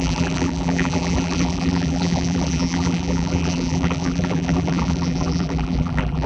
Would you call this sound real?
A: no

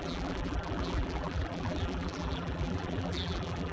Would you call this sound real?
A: no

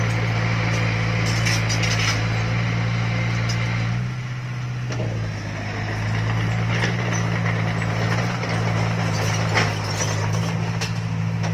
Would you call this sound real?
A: yes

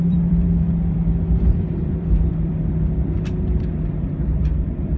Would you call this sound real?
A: no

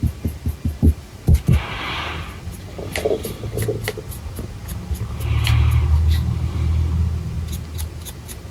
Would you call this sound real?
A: yes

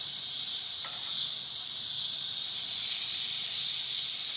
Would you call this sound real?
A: no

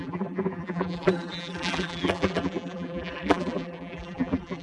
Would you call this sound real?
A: no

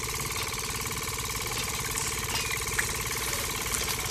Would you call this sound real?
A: yes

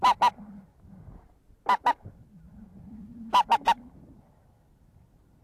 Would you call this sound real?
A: yes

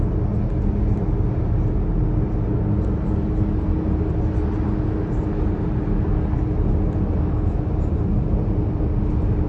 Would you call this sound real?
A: yes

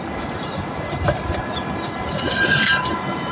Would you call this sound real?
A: no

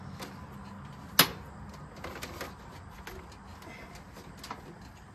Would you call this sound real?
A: yes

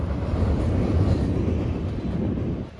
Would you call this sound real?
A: yes